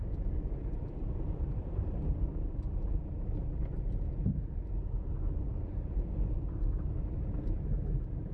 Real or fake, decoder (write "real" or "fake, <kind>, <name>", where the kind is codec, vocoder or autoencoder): fake, vocoder, BigVGAN v2